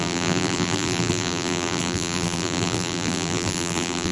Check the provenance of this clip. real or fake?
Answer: fake